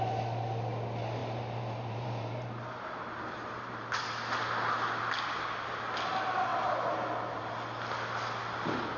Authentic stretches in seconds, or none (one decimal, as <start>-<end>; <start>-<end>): 0.0-1.2; 4.0-6.5; 7.4-9.0